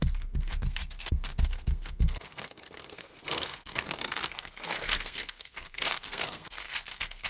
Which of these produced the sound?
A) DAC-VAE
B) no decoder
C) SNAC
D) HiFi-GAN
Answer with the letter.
C